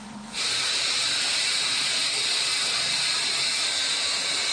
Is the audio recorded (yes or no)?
no